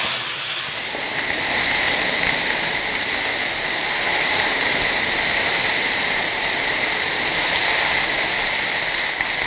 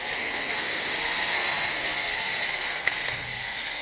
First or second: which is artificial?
second